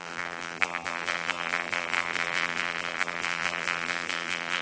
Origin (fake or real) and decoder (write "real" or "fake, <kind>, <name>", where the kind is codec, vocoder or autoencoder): fake, vocoder, BigVGAN v2